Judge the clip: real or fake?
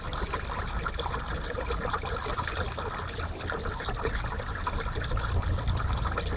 real